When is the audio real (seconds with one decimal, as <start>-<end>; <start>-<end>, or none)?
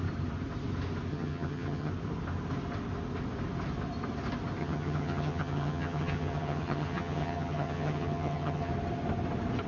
0.0-1.1; 1.9-4.6; 8.7-9.7